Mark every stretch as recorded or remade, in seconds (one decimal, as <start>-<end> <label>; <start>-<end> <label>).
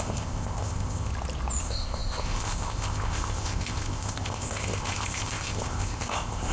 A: 0.0-1.1 remade; 1.1-1.6 recorded; 1.6-6.5 remade